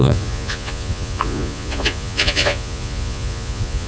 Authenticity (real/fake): fake